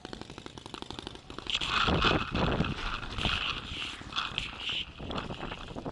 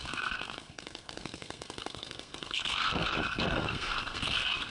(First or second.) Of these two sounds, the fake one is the second